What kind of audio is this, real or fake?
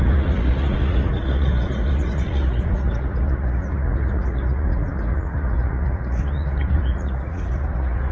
fake